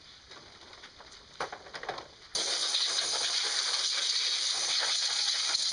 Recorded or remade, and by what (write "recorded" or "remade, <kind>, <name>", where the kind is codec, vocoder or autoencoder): recorded